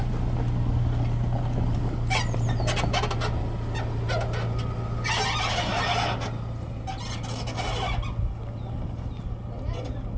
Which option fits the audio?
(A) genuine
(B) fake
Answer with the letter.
A